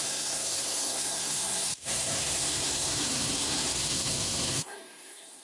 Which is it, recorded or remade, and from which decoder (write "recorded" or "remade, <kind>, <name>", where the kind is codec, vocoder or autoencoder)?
remade, codec, SNAC